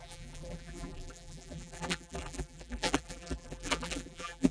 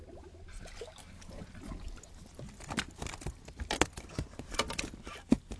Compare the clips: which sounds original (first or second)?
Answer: second